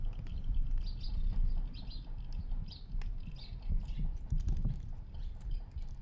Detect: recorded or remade recorded